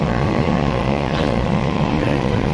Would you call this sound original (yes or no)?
no